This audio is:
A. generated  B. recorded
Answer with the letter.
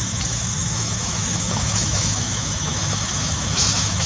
A